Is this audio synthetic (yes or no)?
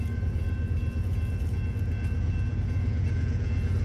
yes